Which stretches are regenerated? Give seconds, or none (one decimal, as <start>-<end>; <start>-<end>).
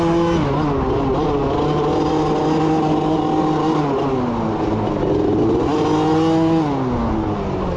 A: none